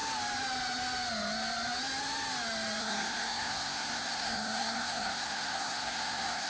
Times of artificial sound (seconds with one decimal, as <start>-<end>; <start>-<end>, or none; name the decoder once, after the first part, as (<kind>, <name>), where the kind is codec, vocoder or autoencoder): 2.8-6.5 (codec, SNAC)